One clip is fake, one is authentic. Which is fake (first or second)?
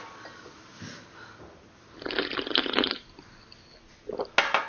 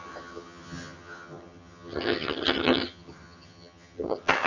second